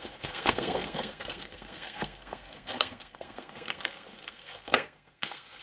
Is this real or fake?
fake